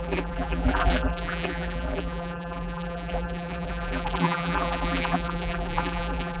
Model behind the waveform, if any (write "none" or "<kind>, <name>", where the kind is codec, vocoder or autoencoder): vocoder, BigVGAN v2